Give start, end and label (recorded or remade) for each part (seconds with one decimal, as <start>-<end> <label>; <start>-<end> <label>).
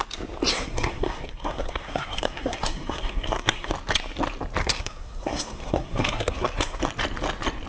0.0-0.5 recorded; 0.5-3.7 remade; 3.7-4.6 recorded; 4.6-6.8 remade; 6.8-7.7 recorded